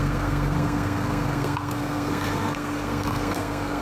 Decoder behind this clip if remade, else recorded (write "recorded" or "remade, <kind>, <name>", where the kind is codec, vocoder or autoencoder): remade, codec, SNAC